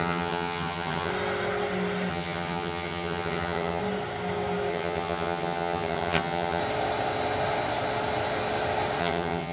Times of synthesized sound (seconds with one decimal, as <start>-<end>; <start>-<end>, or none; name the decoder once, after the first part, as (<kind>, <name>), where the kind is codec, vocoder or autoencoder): 0.0-1.1 (vocoder, HiFi-GAN); 2.1-3.8; 4.7-6.6; 9.0-9.5